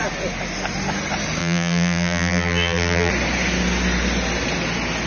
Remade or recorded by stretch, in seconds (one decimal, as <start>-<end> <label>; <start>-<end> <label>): 0.0-1.4 recorded; 1.4-3.1 remade; 3.1-5.1 recorded